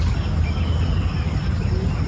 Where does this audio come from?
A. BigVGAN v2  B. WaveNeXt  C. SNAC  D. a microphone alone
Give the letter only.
D